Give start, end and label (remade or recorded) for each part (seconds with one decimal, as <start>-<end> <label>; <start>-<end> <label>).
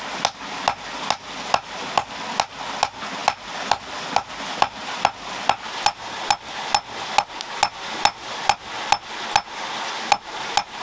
0.0-10.8 recorded